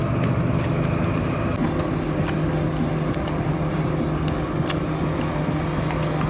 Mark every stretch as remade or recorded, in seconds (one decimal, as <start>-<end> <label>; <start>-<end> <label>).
0.0-6.3 recorded